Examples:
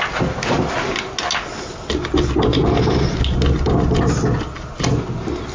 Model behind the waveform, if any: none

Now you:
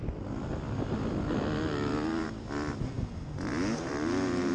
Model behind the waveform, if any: none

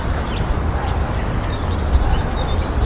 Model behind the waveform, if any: none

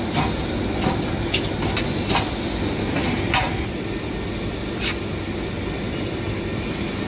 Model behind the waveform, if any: none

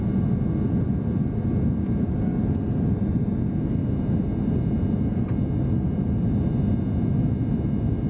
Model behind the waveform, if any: none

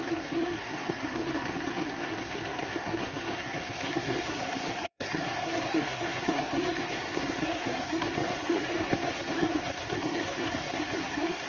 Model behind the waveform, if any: codec, SNAC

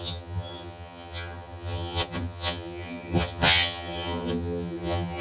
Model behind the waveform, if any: vocoder, HiFi-GAN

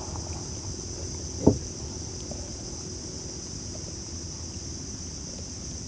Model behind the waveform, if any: none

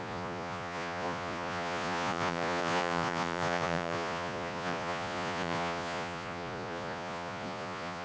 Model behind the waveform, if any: vocoder, Vocos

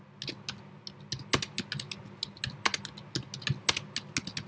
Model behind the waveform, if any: none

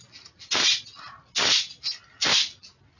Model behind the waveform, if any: none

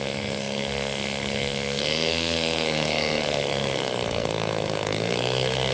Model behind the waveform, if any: codec, SNAC